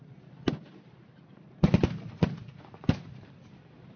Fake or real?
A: real